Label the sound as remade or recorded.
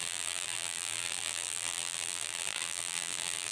remade